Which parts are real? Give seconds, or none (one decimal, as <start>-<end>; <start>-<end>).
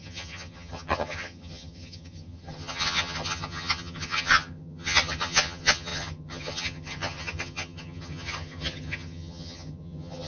none